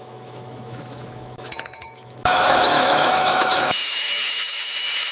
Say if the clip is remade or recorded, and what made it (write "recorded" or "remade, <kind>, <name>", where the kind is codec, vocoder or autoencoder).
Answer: remade, autoencoder, DAC-VAE